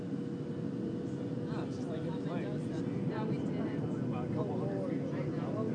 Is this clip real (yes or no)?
yes